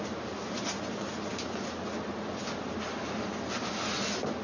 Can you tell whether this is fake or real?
real